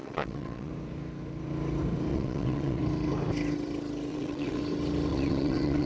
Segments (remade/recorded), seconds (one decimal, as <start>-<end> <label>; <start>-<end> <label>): 0.0-0.7 remade; 0.7-2.1 recorded; 2.1-2.8 remade; 2.8-4.1 recorded; 4.1-4.6 remade; 4.6-5.1 recorded; 5.1-5.9 remade